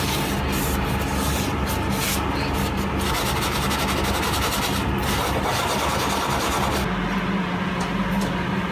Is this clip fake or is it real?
real